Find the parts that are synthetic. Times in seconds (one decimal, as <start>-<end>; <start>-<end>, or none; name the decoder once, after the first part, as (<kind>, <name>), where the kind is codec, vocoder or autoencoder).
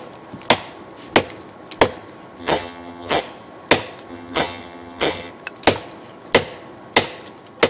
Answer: 2.4-3.2 (vocoder, HiFi-GAN); 4.1-5.3